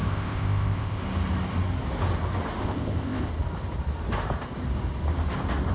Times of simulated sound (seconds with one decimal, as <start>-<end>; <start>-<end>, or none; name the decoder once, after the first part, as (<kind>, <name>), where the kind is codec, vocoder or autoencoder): 0.0-1.0 (codec, ZipCodec); 2.6-3.3